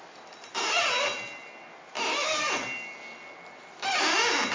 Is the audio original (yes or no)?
yes